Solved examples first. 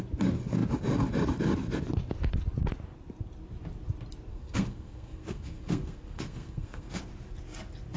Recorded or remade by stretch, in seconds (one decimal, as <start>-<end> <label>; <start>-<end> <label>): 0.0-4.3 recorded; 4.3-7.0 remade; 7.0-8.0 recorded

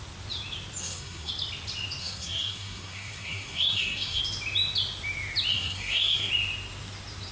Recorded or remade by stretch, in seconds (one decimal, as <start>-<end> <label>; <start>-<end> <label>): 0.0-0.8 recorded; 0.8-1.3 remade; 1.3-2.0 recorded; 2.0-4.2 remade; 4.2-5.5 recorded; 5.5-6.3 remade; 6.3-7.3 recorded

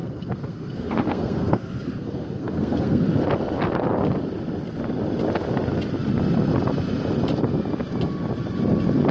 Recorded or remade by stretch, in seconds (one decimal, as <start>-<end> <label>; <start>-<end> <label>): 0.0-3.0 remade; 3.0-9.1 recorded

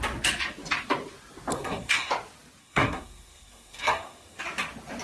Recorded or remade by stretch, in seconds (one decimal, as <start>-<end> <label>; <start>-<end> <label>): 0.0-1.5 recorded; 1.5-2.1 remade; 2.1-2.6 recorded; 2.6-4.4 remade; 4.4-5.0 recorded

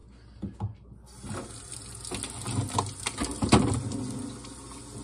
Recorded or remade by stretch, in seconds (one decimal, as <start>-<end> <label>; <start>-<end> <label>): 0.0-5.0 recorded

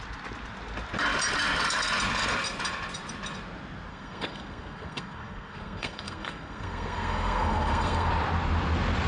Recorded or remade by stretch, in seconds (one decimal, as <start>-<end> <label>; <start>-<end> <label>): 0.0-3.9 recorded; 3.9-8.1 remade; 8.1-9.1 recorded

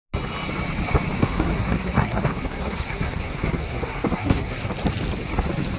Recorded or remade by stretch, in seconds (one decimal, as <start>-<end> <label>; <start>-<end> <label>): 0.0-1.2 recorded; 1.2-4.7 remade; 4.7-5.8 recorded

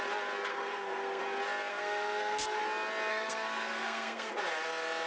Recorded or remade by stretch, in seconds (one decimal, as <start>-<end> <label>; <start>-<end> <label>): 0.0-0.5 recorded; 0.5-1.2 remade; 1.2-1.7 recorded; 1.7-2.6 remade; 2.6-3.1 recorded; 3.1-4.3 remade; 4.3-5.1 recorded